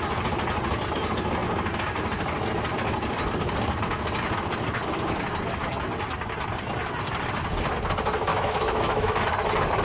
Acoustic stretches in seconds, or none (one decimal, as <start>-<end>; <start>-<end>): 0.0-8.3; 9.2-9.8